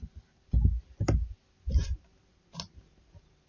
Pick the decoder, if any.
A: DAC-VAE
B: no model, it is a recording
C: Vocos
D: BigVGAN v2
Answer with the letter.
B